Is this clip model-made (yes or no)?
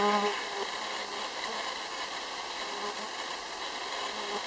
no